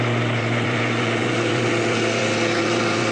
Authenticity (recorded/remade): remade